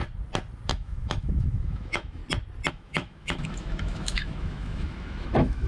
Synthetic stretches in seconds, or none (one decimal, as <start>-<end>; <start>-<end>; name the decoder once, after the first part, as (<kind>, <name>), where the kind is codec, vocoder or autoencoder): 0.7-2.2 (autoencoder, DAC-VAE); 2.7-5.7